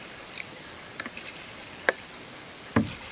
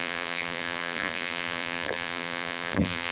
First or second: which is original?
first